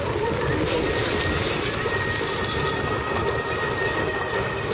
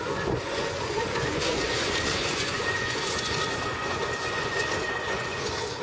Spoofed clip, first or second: second